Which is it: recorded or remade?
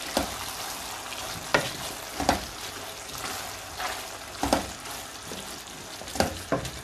recorded